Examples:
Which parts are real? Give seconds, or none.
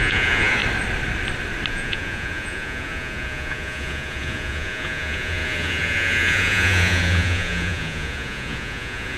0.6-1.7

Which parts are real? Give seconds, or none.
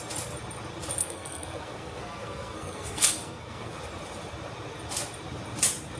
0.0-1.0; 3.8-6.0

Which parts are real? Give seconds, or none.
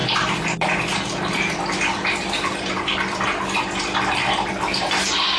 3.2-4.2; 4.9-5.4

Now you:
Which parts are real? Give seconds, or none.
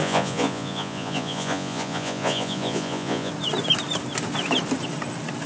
3.3-5.5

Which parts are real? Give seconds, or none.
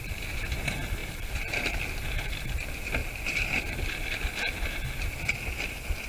0.0-1.0; 2.2-3.0; 4.5-6.1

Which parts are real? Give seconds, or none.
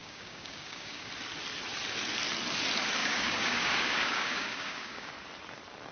1.1-3.0; 5.1-5.9